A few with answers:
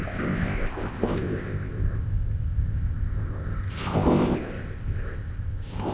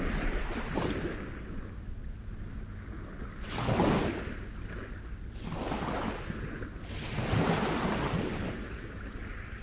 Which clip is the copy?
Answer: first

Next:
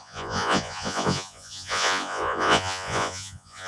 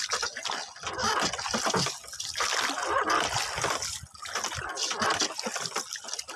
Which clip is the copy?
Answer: first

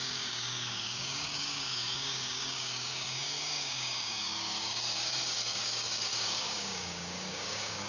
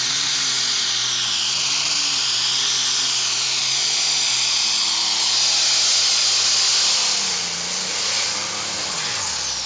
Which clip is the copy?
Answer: first